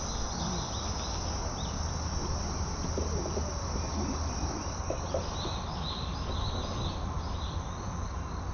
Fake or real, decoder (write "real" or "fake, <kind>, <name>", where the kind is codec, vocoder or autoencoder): real